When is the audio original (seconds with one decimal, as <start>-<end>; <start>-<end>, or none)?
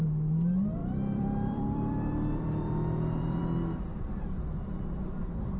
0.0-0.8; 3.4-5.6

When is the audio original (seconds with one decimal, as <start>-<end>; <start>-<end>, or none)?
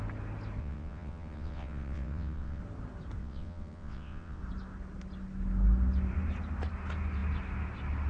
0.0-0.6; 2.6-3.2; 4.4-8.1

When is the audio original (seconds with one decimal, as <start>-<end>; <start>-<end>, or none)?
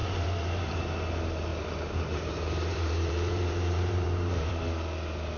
0.8-1.5; 4.5-5.4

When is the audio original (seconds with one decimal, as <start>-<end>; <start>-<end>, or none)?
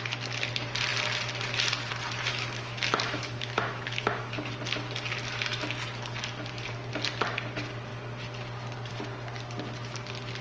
0.0-2.3; 4.3-10.4